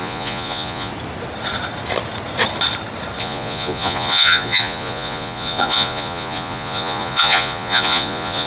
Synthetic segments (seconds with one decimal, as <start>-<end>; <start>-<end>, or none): 0.0-0.9; 3.2-8.5